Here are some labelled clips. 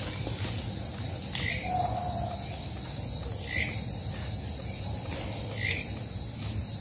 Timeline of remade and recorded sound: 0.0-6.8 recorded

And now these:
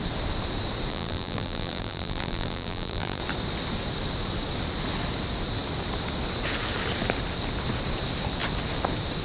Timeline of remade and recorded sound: 0.0-0.9 recorded; 0.9-3.2 remade; 3.2-9.2 recorded

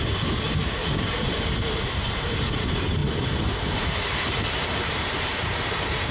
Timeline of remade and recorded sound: 0.0-0.8 remade; 0.8-1.6 recorded; 1.6-3.0 remade; 3.0-3.5 recorded; 3.5-6.1 remade